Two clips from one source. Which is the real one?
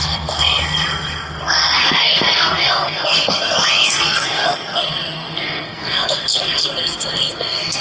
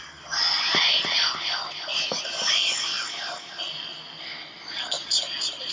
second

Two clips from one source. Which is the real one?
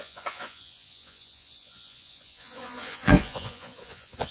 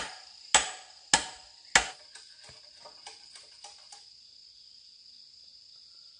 second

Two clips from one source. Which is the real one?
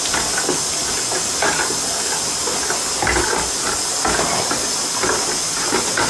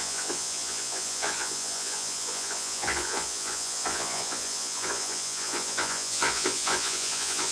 first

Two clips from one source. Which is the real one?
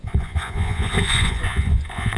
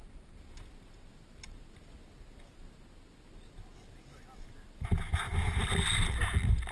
second